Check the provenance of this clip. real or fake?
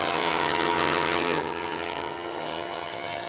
fake